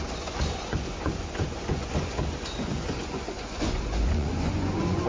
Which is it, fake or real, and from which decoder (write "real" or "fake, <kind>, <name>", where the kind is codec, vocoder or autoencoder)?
fake, vocoder, Vocos